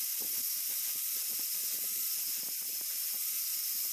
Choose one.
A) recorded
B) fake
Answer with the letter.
A